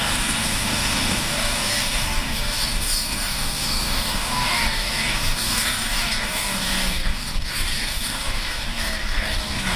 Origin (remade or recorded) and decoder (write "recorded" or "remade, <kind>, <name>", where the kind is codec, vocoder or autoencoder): remade, codec, DAC